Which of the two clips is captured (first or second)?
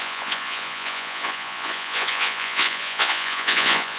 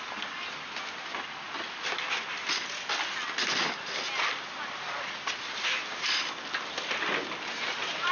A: second